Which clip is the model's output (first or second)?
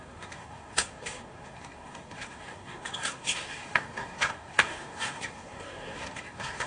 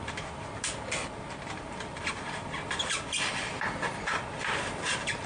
first